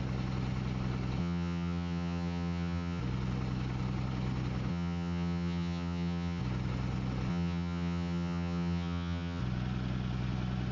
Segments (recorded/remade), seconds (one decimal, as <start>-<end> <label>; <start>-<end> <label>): 0.0-1.2 recorded; 1.2-3.0 remade; 3.0-4.7 recorded; 4.7-6.4 remade; 6.4-7.3 recorded; 7.3-9.4 remade; 9.4-10.7 recorded